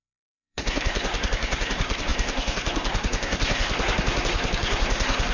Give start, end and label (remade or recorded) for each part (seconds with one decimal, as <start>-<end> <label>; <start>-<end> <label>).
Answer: 0.0-5.3 remade

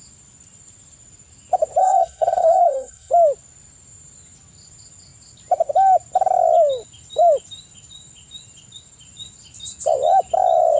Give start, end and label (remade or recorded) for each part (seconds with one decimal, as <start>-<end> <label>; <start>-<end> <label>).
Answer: 0.0-1.8 recorded; 1.8-3.1 remade; 3.1-10.8 recorded